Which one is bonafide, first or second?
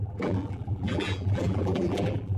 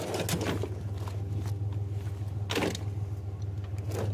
second